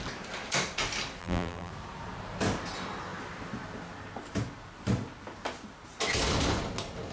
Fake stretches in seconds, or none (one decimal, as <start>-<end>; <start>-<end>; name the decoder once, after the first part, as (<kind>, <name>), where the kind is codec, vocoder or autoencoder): 1.2-1.7 (vocoder, BigVGAN v2)